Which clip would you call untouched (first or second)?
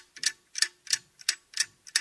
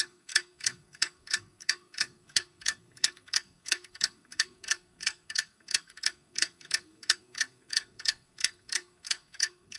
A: first